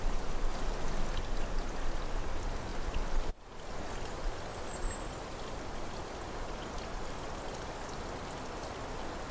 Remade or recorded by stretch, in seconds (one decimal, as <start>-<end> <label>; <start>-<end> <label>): 0.0-0.5 recorded; 0.5-1.2 remade; 1.2-2.7 recorded; 2.7-3.3 remade; 3.3-9.3 recorded